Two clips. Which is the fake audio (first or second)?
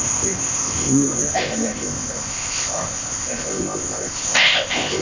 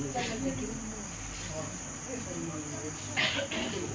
first